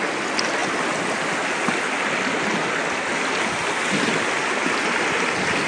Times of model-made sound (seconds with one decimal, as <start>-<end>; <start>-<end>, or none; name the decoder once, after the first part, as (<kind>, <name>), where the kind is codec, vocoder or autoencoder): none

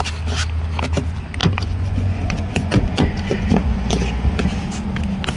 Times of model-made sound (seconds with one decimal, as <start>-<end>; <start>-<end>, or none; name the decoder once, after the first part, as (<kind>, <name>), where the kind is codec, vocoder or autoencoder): 1.4-4.6 (vocoder, Vocos)

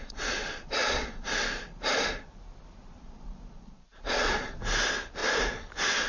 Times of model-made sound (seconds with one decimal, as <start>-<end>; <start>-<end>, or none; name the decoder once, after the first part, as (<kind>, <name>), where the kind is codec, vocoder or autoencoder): 0.0-1.3 (vocoder, Vocos); 3.0-4.6

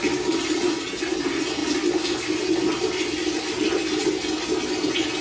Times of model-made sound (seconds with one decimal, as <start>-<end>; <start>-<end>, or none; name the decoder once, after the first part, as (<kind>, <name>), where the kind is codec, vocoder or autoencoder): none

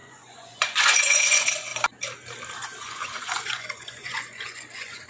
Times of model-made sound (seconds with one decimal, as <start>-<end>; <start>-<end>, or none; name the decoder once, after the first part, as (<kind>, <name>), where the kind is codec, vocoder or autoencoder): 0.0-1.7 (vocoder, Vocos); 2.8-5.1